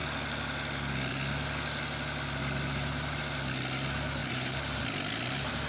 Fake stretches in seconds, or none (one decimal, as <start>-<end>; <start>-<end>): 2.4-3.2; 4.2-4.8